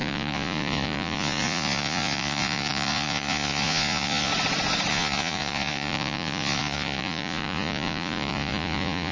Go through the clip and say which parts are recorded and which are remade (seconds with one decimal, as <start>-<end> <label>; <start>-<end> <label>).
0.0-4.3 remade; 4.3-4.9 recorded; 4.9-9.1 remade